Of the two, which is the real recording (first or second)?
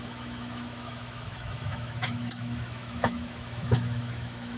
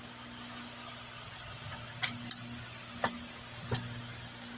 second